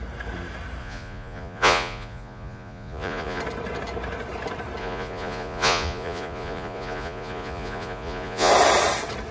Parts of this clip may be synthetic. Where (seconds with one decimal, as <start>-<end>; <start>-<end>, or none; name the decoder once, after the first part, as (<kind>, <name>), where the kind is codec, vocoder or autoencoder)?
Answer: 0.8-3.4 (vocoder, Vocos); 4.8-8.5